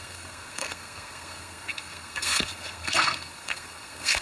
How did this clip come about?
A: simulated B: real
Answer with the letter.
A